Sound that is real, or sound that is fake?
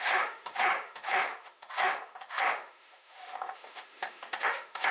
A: fake